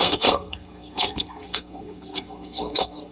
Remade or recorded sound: remade